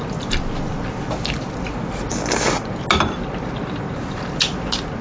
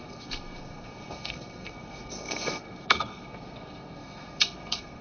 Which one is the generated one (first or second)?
second